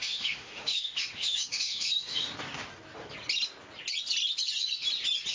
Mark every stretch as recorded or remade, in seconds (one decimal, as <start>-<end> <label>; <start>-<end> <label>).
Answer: 0.0-2.3 remade; 2.3-5.3 recorded